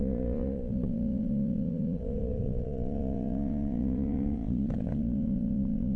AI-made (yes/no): yes